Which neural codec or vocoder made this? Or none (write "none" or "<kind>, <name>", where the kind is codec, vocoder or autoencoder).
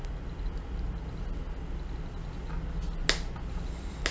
none